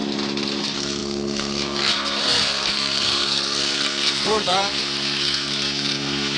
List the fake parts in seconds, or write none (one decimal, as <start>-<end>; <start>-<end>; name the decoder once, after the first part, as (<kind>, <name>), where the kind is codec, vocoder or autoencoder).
0.6-6.4 (codec, SNAC)